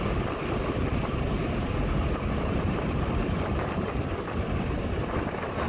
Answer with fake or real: fake